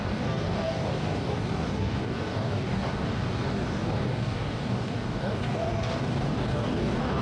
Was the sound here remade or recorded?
remade